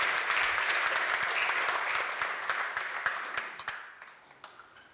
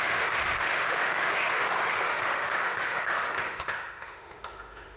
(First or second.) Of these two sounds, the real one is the first